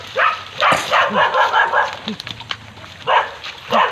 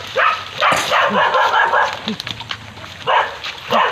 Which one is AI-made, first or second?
first